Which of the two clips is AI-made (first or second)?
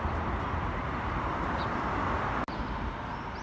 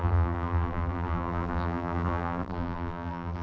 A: second